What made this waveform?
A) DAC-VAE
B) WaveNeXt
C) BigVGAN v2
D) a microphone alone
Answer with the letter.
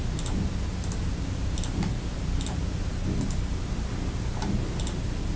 D